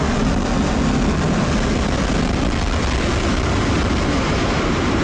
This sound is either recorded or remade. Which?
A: recorded